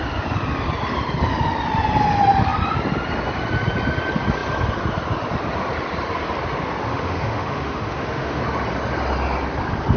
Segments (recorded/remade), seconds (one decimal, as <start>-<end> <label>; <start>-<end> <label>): 0.0-6.9 recorded; 6.9-8.4 remade; 8.4-10.0 recorded